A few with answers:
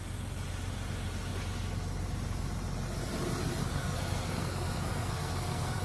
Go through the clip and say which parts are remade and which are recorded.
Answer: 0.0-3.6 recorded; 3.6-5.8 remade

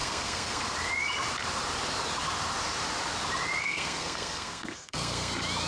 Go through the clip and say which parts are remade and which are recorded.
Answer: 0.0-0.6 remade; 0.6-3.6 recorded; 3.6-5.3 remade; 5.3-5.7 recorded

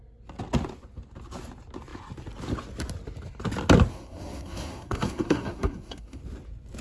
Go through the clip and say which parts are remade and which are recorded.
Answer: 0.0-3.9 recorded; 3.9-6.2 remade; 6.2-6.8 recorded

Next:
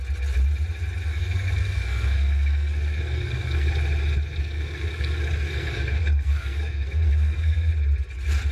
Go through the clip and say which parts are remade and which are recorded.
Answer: 0.0-1.1 recorded; 1.1-3.7 remade; 3.7-4.4 recorded; 4.4-7.7 remade; 7.7-8.5 recorded

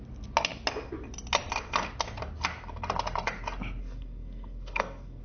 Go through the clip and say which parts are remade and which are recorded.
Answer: 0.0-3.8 recorded; 3.8-5.2 remade